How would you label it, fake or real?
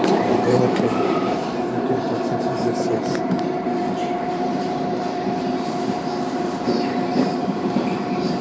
fake